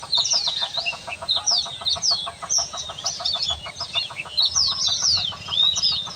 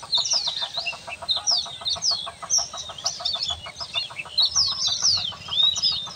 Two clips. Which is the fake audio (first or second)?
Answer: first